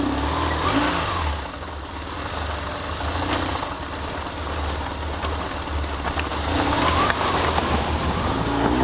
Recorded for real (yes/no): yes